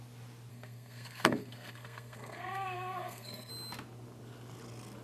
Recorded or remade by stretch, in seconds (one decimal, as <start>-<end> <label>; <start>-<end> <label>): 0.0-0.5 recorded; 0.5-3.5 remade; 3.5-5.0 recorded